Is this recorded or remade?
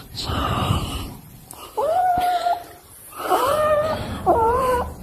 remade